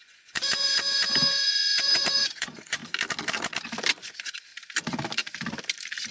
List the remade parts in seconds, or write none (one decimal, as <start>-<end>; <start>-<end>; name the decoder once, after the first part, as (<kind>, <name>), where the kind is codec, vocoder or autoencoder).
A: 0.0-2.8 (vocoder, Vocos); 4.0-4.5